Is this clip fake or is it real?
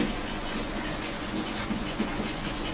fake